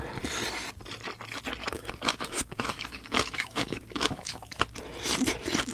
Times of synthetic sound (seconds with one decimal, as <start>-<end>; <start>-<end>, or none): 1.6-4.6